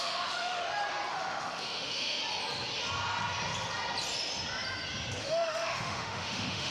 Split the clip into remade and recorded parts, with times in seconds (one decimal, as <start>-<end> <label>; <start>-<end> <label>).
0.0-0.6 remade; 0.6-1.1 recorded; 1.1-2.2 remade; 2.2-5.2 recorded; 5.2-6.7 remade